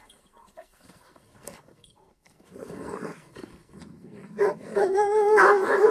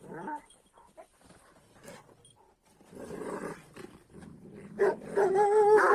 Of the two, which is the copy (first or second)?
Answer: first